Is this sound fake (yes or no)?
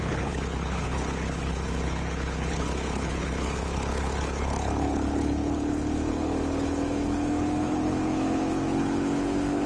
yes